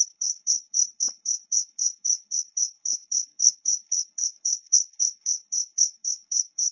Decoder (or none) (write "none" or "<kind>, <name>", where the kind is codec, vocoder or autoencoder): codec, HILCodec